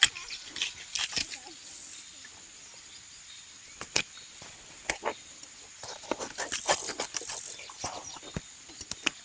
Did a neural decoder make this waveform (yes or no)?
no